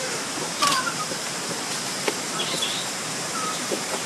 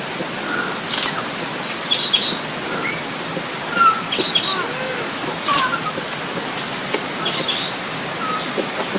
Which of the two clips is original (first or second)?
second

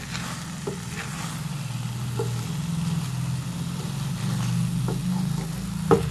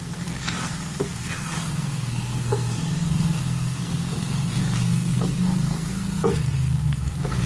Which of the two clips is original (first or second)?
first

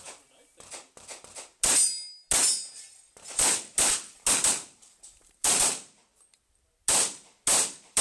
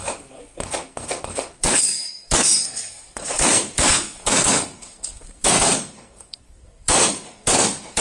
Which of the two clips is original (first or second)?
first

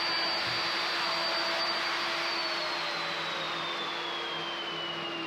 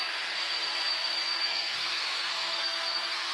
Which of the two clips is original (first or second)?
first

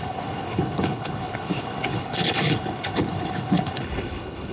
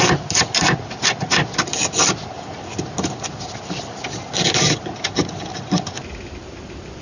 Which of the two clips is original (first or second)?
second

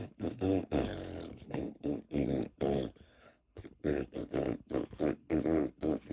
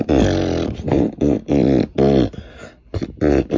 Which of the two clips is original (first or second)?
second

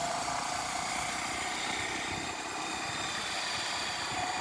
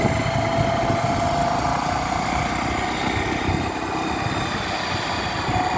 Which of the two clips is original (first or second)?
second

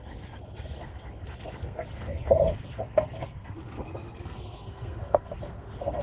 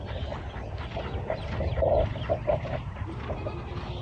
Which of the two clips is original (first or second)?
second